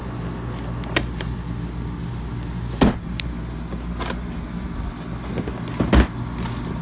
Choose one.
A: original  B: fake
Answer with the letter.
A